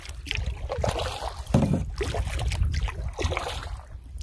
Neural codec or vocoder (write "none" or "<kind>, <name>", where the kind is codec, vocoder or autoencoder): vocoder, BigVGAN v2